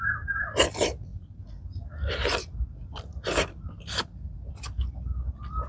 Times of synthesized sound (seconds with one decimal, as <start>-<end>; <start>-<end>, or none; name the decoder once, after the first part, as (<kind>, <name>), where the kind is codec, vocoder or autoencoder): none